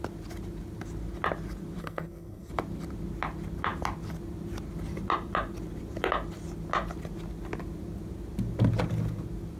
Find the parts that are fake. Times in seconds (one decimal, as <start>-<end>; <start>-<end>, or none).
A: 1.8-2.5